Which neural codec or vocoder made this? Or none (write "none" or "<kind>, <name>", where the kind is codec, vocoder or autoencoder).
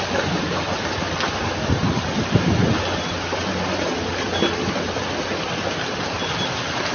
none